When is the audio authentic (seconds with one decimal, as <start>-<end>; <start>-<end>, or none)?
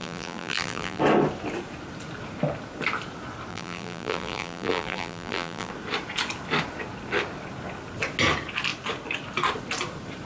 1.0-3.5; 5.7-10.3